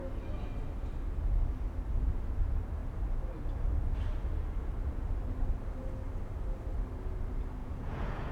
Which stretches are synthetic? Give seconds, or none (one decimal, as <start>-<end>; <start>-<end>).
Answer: 7.6-8.3